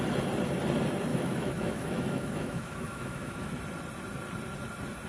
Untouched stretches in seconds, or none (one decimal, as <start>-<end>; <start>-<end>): 0.0-1.1; 3.5-5.1